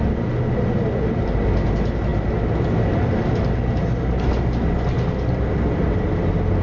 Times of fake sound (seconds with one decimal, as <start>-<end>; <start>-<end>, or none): none